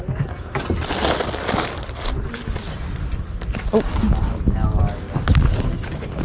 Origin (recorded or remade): recorded